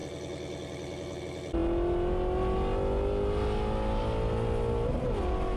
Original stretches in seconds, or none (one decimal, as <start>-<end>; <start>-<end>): 0.0-5.6